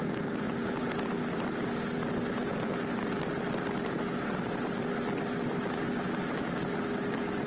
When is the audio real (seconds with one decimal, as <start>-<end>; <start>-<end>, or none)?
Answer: 0.0-7.5